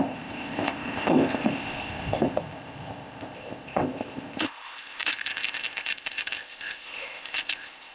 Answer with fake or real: fake